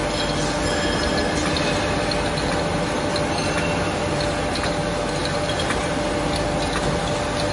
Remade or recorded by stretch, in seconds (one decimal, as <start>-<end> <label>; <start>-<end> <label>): 0.0-5.2 recorded; 5.2-5.8 remade; 5.8-7.5 recorded